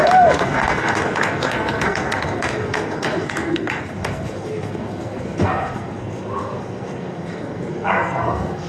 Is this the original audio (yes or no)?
no